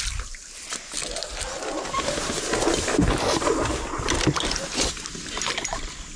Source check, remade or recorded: recorded